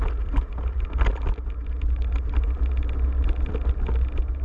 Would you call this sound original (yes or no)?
yes